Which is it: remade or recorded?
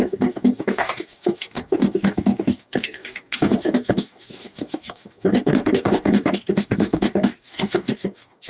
remade